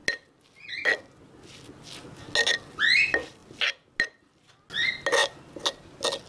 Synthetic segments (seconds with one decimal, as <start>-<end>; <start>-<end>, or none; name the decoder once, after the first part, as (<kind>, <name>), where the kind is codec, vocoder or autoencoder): none